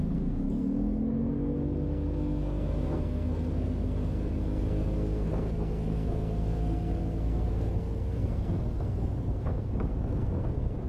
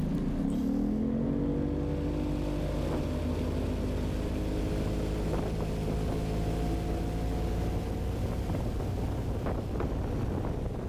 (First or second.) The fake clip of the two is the first